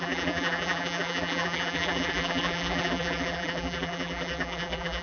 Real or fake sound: fake